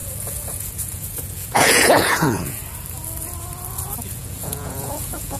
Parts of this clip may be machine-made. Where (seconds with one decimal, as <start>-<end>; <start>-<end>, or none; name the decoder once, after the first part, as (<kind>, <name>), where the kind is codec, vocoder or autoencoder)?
0.0-2.6 (vocoder, Vocos); 4.1-5.4